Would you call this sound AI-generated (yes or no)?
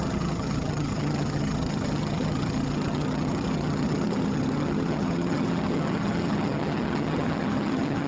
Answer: yes